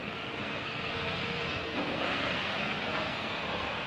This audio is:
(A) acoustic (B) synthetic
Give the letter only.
B